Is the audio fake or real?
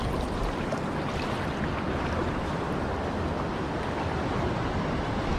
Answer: real